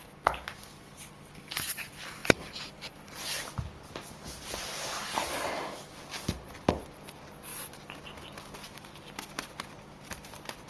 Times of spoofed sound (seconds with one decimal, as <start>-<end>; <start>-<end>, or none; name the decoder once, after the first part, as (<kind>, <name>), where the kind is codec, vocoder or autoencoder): none